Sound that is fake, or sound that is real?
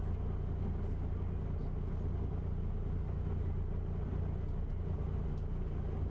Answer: real